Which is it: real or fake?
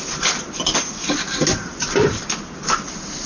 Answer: real